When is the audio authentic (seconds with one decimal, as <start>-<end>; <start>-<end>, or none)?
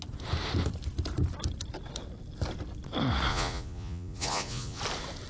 0.0-3.3; 4.8-5.3